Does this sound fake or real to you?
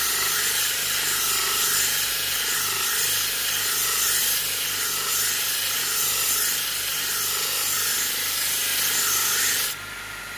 real